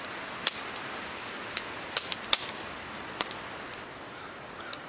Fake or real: real